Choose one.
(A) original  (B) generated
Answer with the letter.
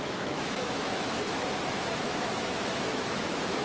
B